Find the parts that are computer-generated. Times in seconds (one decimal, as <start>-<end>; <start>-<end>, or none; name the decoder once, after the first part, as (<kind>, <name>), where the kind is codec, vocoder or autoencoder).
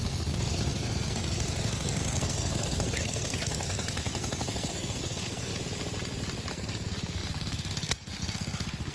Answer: 0.0-5.5 (codec, SNAC); 6.5-8.9